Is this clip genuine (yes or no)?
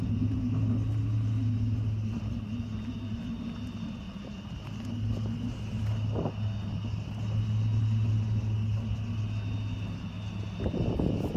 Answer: yes